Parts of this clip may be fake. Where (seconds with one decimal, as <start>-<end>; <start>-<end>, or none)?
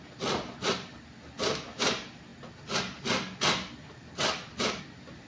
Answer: none